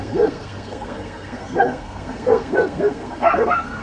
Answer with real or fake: fake